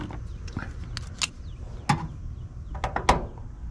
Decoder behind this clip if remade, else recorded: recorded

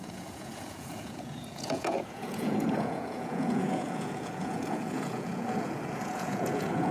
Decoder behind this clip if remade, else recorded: remade, vocoder, Vocos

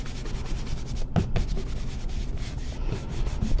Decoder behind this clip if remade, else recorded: recorded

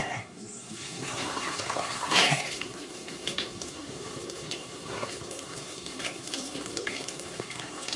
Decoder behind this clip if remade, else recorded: remade, codec, SNAC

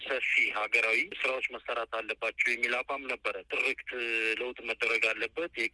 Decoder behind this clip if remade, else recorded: recorded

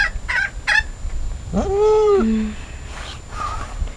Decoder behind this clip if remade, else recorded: recorded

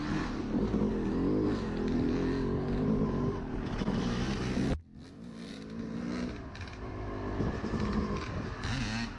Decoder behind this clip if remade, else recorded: recorded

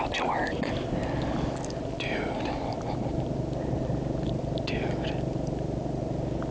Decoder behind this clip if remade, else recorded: recorded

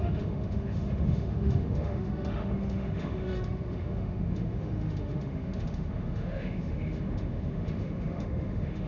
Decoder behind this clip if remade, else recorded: remade, autoencoder, DAC-VAE